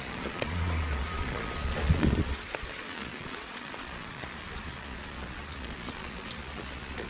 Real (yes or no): no